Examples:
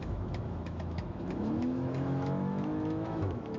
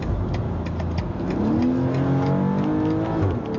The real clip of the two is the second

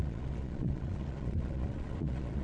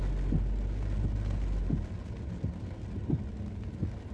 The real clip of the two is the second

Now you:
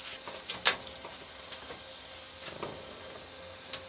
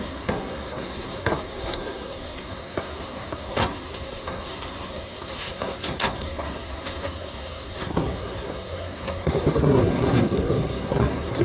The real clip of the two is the first